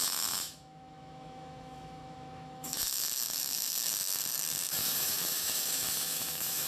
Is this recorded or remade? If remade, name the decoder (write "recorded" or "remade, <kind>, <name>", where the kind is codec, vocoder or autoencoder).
remade, autoencoder, DAC-VAE